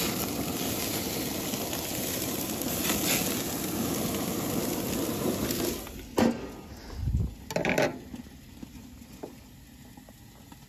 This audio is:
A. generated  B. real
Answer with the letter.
B